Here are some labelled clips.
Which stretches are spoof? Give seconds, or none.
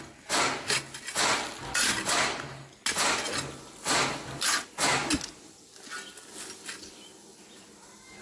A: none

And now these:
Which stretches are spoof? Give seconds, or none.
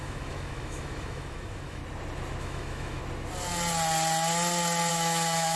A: 0.0-1.8 (autoencoder, DAC-VAE); 2.4-3.0; 4.9-5.6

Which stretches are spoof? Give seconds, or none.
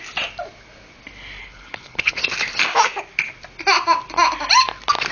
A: 1.4-2.2 (codec, HILCodec)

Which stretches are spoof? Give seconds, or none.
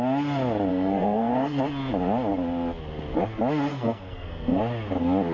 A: 0.7-1.6 (codec, SNAC); 3.7-4.6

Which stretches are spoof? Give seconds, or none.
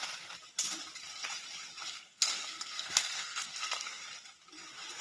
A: 1.9-4.0 (codec, SNAC)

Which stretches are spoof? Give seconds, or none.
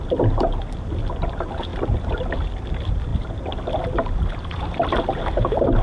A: none